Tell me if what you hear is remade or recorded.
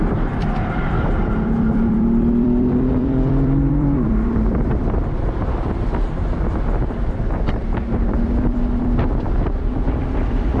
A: remade